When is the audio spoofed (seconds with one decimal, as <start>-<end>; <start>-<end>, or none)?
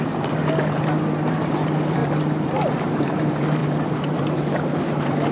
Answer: 0.0-5.3